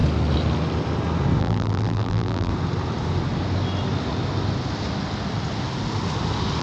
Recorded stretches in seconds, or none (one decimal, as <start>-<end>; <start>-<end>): 0.0-1.4; 2.5-6.6